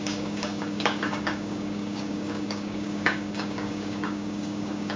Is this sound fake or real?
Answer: fake